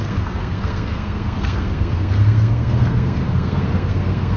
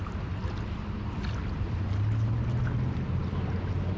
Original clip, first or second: second